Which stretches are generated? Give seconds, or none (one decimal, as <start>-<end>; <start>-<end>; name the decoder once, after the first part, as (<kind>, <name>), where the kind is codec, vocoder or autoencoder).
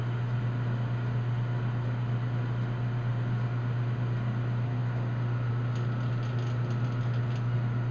none